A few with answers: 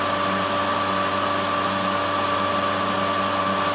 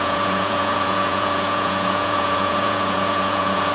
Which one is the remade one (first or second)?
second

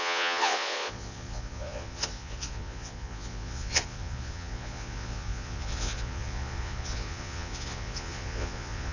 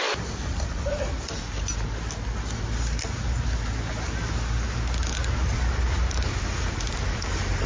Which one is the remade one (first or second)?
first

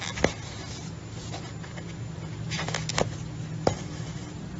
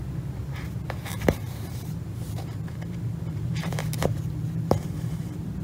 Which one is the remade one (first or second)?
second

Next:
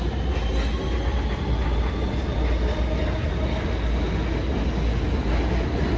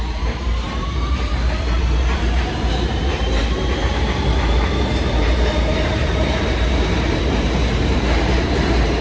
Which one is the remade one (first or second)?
second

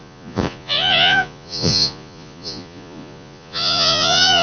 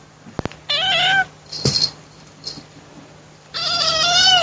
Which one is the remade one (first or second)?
first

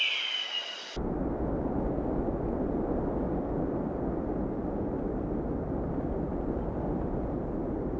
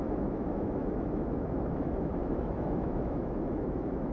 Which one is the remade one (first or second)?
second